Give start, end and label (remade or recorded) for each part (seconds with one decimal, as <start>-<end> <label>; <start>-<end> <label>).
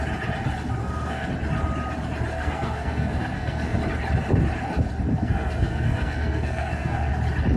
0.0-0.8 recorded; 0.8-1.3 remade; 1.3-2.3 recorded; 2.3-3.8 remade; 3.8-5.1 recorded; 5.1-7.1 remade; 7.1-7.6 recorded